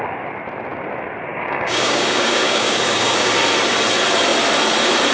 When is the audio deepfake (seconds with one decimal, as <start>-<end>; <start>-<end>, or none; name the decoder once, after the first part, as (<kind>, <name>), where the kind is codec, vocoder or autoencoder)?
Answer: 1.3-3.3 (codec, DAC)